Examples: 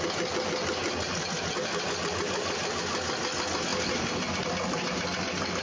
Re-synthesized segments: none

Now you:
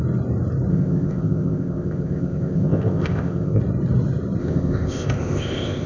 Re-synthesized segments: 0.7-3.6; 4.4-5.9

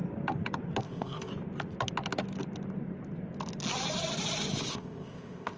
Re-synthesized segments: 0.8-1.3; 4.7-5.6

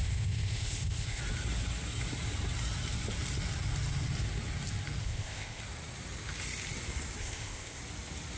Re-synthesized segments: 0.0-1.2; 5.0-5.6; 7.2-7.8

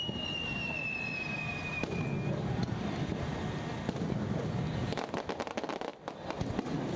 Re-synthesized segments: none

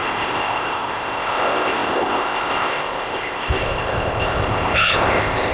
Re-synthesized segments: 0.0-5.5

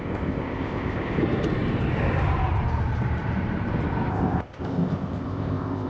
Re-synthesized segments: 0.0-1.2; 4.1-5.9